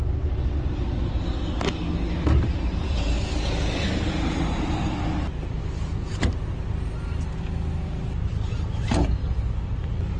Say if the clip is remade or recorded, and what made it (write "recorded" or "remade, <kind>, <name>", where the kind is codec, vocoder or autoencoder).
recorded